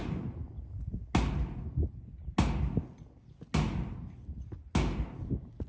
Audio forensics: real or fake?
real